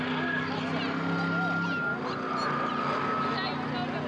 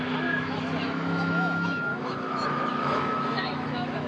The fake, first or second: second